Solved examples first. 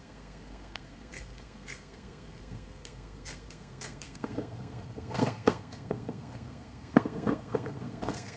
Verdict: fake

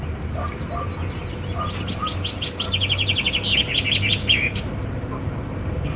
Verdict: real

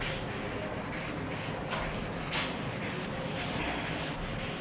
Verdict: real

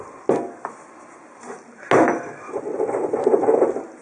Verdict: real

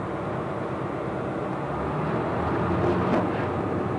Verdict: real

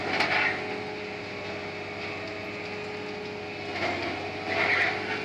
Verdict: real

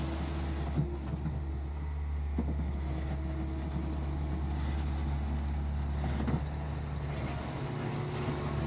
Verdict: real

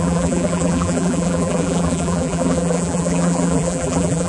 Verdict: fake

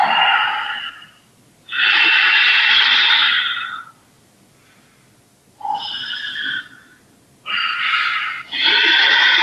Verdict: real